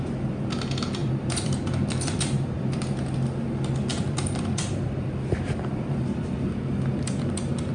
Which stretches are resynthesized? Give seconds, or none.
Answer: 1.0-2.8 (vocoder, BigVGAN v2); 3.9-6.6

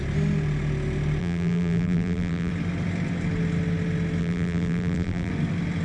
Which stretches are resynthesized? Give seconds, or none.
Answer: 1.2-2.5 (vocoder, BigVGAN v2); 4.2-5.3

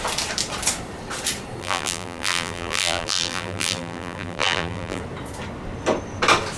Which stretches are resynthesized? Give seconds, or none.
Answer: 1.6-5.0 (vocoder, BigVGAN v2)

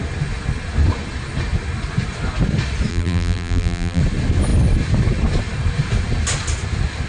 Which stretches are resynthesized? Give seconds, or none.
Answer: 2.9-4.0 (vocoder, BigVGAN v2)